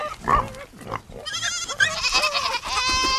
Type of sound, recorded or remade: recorded